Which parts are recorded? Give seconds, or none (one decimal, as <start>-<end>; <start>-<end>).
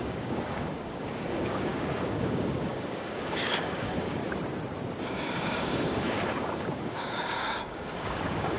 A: 4.2-5.0